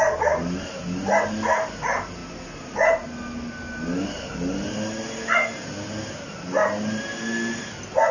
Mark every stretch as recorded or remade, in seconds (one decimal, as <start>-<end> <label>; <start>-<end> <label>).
0.0-8.1 recorded